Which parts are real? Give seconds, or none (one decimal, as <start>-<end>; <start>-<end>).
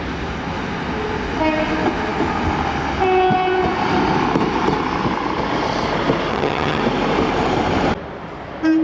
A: 0.0-6.3; 6.8-8.8